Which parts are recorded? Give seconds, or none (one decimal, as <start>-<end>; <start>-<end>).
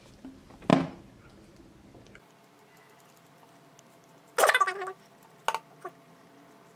0.0-6.8